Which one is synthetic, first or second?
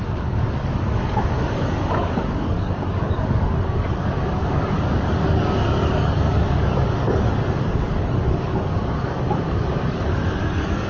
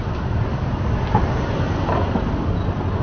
first